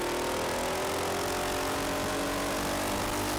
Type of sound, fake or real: real